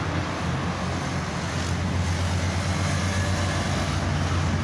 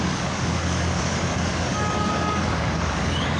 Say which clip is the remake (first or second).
second